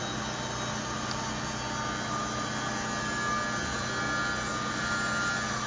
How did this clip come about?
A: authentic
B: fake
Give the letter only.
A